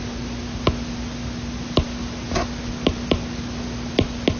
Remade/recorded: recorded